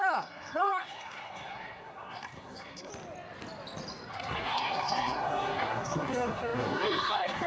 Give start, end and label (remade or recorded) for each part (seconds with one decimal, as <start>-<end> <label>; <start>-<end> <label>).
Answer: 0.0-2.9 remade; 2.9-4.1 recorded; 4.1-7.5 remade